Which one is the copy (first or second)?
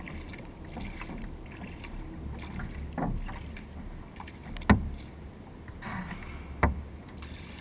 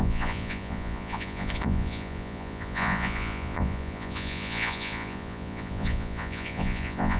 second